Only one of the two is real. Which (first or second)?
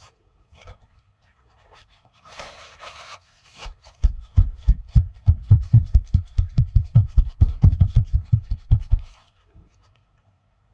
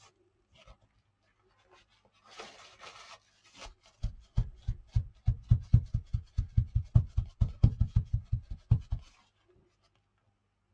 second